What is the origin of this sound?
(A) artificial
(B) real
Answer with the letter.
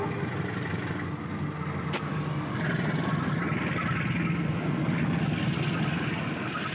B